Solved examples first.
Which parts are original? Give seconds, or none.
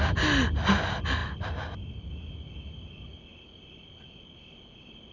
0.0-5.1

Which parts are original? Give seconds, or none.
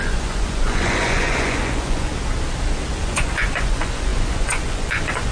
2.1-3.0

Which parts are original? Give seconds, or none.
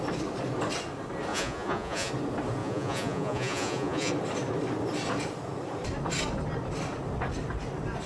0.0-1.3; 2.1-2.6; 4.1-8.1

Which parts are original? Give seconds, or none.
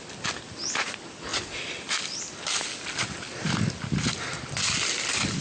0.0-5.4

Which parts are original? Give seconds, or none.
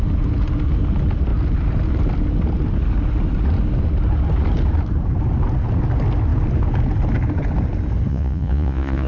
0.0-8.1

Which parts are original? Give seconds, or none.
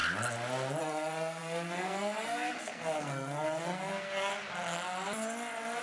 0.0-0.8; 4.3-5.8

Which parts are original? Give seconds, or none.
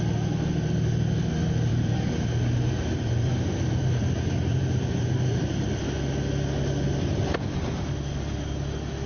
0.0-1.7; 5.6-9.1